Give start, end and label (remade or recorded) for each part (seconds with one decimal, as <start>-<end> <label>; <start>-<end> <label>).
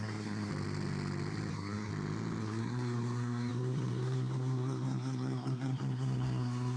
0.0-0.5 remade; 0.5-1.5 recorded; 1.5-1.9 remade; 1.9-2.4 recorded; 2.4-6.8 remade